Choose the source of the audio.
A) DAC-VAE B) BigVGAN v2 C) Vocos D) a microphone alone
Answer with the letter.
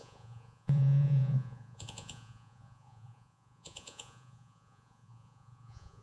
C